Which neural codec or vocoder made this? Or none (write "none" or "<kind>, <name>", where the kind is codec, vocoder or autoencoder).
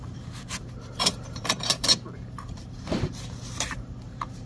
vocoder, BigVGAN v2